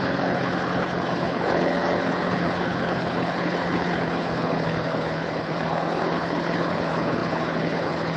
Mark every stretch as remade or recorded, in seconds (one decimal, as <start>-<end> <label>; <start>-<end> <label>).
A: 0.0-8.2 remade

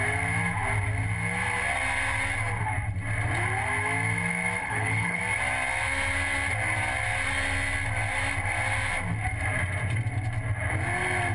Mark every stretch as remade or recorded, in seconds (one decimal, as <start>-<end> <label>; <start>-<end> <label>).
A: 0.0-4.6 recorded; 4.6-5.2 remade; 5.2-11.3 recorded

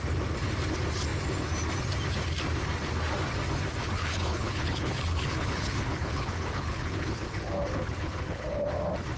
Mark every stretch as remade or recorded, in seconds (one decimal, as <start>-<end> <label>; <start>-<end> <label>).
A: 0.0-3.8 recorded; 3.8-8.7 remade; 8.7-9.2 recorded

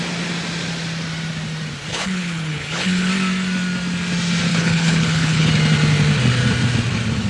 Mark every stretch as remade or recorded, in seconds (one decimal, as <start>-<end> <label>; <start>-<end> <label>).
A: 0.0-1.9 recorded; 1.9-3.1 remade; 3.1-4.5 recorded; 4.5-5.5 remade; 5.5-7.3 recorded

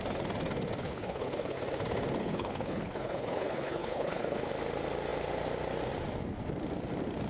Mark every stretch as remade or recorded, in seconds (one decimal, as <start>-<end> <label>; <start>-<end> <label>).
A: 0.0-0.8 recorded; 0.8-1.6 remade; 1.6-2.2 recorded; 2.2-4.5 remade; 4.5-7.3 recorded

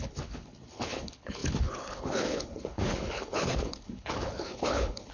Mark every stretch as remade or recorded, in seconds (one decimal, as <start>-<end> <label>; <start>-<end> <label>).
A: 0.0-5.1 remade

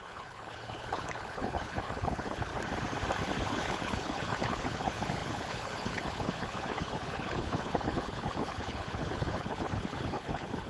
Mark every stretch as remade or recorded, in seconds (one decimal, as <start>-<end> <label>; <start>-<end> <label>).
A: 0.0-2.5 remade; 2.5-3.5 recorded; 3.5-10.7 remade